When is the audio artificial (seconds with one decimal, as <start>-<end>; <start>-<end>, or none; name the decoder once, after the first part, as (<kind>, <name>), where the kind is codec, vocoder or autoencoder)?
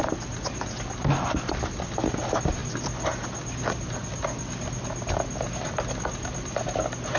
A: none